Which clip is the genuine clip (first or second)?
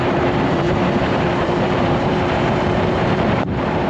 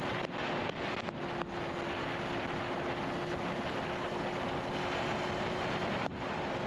second